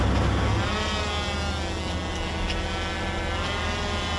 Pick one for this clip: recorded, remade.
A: recorded